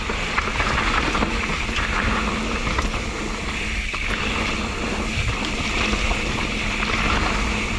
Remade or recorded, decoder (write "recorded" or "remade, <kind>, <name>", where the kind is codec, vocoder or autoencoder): recorded